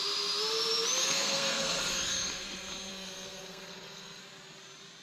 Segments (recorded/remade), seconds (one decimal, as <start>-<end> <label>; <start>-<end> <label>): 0.0-1.0 recorded; 1.0-1.8 remade; 1.8-2.9 recorded; 2.9-4.2 remade; 4.2-5.0 recorded